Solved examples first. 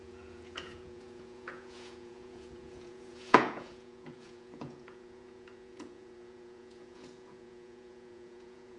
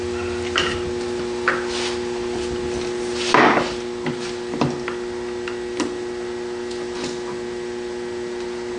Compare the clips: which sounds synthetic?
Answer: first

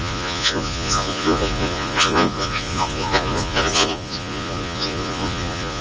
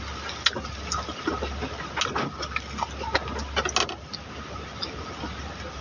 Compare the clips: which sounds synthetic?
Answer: first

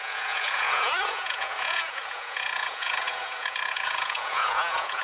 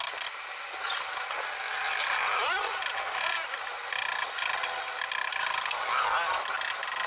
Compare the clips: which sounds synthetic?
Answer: first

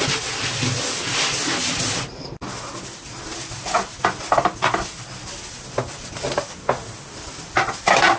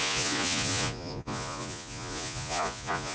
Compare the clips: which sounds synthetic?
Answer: second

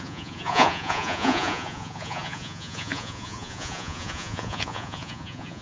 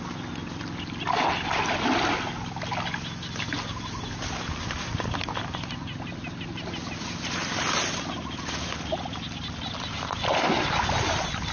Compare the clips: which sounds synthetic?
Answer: first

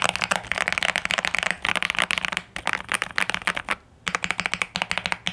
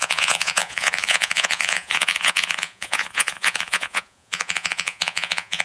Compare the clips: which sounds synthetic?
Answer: second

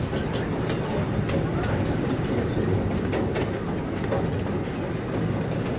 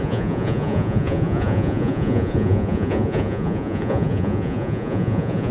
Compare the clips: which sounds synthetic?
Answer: second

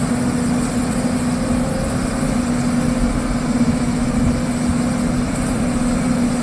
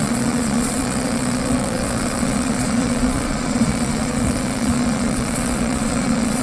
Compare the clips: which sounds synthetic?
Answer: second